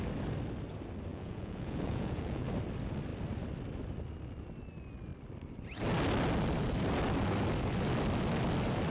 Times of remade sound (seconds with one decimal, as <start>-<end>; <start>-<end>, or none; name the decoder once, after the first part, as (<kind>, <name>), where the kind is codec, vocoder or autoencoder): 1.1-2.5 (vocoder, Vocos)